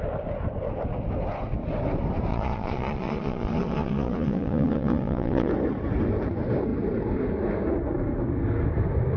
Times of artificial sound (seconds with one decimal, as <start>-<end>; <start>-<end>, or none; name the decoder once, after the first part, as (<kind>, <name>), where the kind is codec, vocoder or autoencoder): 2.3-5.5 (vocoder, Vocos)